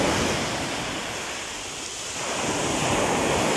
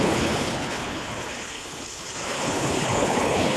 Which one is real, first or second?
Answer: first